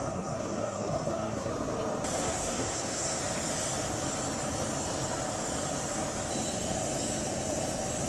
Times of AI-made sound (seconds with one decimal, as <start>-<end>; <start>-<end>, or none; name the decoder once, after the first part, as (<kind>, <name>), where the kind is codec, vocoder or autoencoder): 0.0-1.5 (codec, SNAC); 2.2-3.2